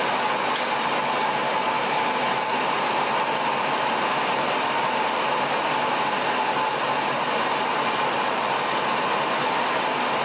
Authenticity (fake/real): real